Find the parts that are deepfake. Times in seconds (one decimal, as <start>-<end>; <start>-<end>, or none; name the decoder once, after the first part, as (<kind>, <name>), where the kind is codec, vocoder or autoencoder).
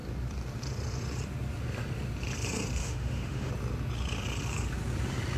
2.8-3.5 (autoencoder, DAC-VAE)